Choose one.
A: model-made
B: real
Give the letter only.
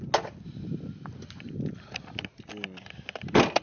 B